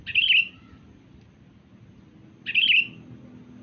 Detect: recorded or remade recorded